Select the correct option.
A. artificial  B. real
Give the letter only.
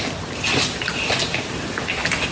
B